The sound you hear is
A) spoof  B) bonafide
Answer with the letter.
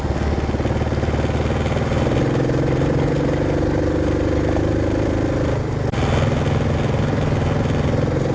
B